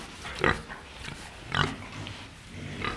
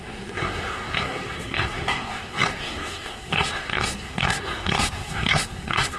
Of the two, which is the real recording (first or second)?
first